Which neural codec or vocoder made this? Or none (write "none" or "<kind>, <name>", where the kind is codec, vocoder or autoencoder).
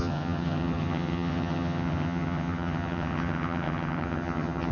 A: vocoder, HiFi-GAN